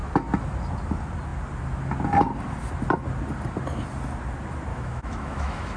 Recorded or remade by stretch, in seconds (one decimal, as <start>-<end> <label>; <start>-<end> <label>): 0.0-4.7 recorded; 4.7-5.8 remade